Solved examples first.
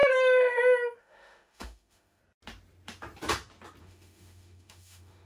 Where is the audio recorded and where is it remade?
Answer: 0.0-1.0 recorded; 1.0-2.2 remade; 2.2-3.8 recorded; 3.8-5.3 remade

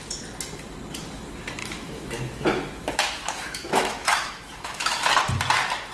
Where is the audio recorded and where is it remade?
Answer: 0.0-1.6 recorded; 1.6-5.1 remade; 5.1-5.9 recorded

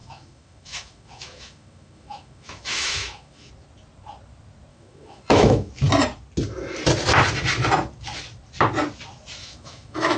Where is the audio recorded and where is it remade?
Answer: 0.0-3.5 remade; 3.5-4.7 recorded; 4.7-5.7 remade; 5.7-9.4 recorded; 9.4-10.2 remade

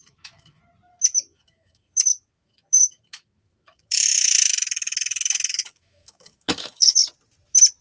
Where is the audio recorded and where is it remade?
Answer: 0.0-0.6 remade; 0.6-1.2 recorded; 1.2-7.0 remade; 7.0-7.8 recorded

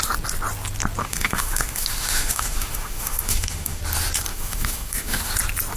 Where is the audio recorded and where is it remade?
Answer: 0.0-1.0 recorded; 1.0-3.8 remade; 3.8-4.3 recorded; 4.3-5.3 remade; 5.3-5.8 recorded